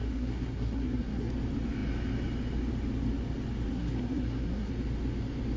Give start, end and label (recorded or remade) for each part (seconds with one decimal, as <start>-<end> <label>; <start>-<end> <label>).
0.0-1.3 remade; 1.3-3.7 recorded; 3.7-4.7 remade; 4.7-5.6 recorded